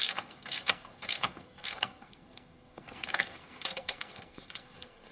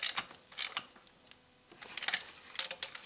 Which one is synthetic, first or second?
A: first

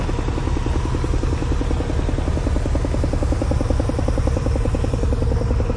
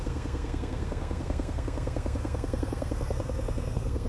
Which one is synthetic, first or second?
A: second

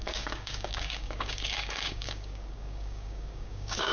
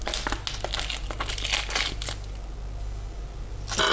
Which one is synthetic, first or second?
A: first